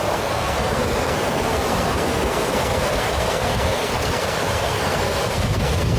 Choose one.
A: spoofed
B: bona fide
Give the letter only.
A